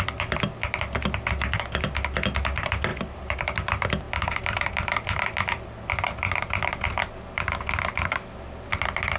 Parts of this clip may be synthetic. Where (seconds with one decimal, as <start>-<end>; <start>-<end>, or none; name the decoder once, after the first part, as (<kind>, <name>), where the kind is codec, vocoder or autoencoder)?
2.9-5.9 (vocoder, BigVGAN v2)